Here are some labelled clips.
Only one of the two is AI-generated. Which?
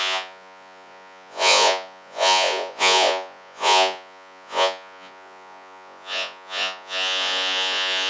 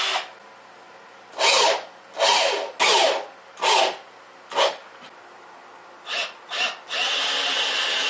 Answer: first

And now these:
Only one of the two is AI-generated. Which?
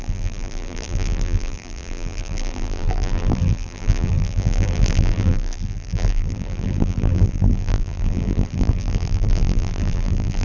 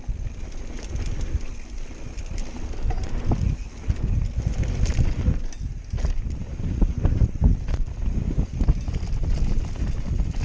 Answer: first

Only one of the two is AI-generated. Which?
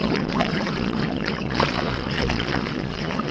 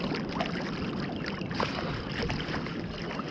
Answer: first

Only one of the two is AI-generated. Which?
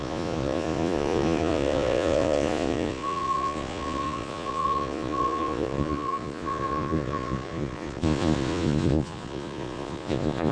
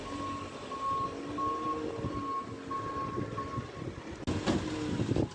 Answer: first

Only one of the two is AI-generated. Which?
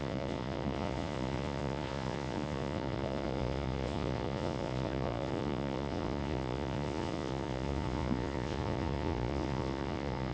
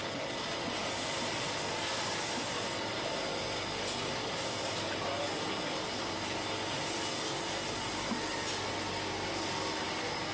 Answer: first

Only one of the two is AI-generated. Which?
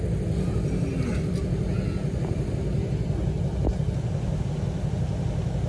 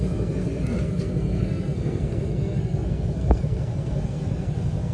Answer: second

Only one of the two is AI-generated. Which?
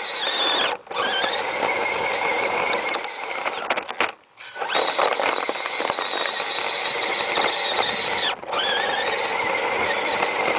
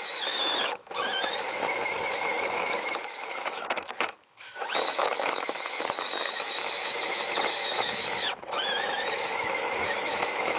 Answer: second